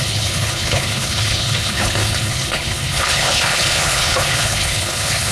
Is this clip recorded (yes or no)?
no